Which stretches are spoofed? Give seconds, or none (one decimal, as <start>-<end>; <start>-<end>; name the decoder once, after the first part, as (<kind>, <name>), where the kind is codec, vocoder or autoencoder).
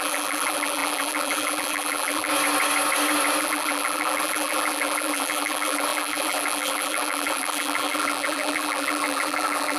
0.0-2.3 (vocoder, BigVGAN v2); 3.4-9.8